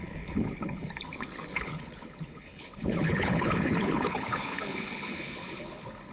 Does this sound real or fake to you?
fake